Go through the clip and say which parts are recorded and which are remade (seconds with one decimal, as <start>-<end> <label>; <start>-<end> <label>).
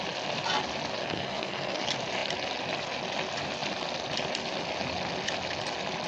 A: 0.0-1.0 recorded; 1.0-1.8 remade; 1.8-6.1 recorded